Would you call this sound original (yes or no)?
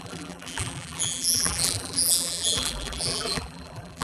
no